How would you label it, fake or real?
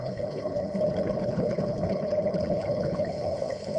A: fake